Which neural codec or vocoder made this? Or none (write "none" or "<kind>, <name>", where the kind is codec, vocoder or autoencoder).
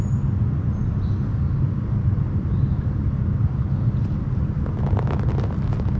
none